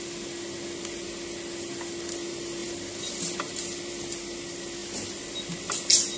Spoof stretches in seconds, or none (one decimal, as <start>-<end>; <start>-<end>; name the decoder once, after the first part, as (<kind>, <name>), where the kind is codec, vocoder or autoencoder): 2.6-3.3 (vocoder, BigVGAN v2)